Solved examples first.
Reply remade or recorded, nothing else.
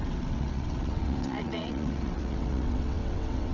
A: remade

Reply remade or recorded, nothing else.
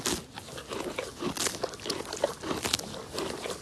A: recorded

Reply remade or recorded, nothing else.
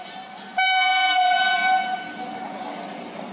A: recorded